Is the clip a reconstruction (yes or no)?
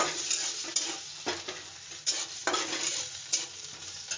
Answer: no